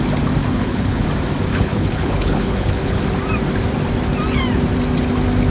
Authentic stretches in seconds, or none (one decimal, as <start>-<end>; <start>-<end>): 0.0-0.4; 1.1-1.5; 3.0-5.5

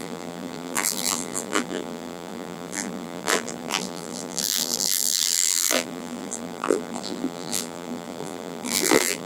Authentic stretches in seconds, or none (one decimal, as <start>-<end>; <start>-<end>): none

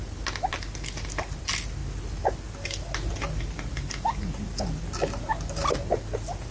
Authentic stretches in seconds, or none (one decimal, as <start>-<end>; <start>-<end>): 0.0-6.5

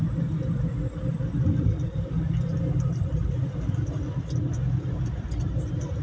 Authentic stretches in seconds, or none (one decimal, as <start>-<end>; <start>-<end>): 0.0-6.0